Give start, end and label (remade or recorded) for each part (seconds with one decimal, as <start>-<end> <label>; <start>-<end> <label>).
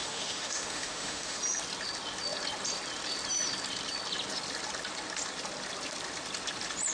0.0-1.4 remade; 1.4-6.9 recorded